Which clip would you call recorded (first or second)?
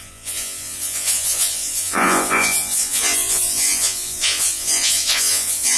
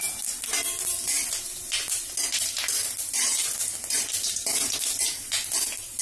second